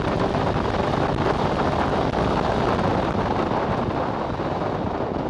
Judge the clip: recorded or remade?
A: recorded